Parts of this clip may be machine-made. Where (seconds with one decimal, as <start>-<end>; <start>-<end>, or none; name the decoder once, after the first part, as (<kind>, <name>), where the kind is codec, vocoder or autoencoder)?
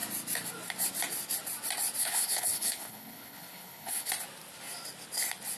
2.0-4.1 (codec, HILCodec)